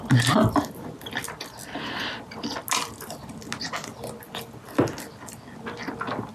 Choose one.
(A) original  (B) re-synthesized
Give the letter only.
A